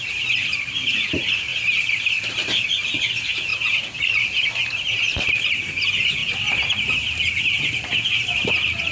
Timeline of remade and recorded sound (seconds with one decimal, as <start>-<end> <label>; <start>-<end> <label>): 0.0-3.5 remade; 3.5-5.1 recorded; 5.1-6.2 remade; 6.2-7.6 recorded; 7.6-8.9 remade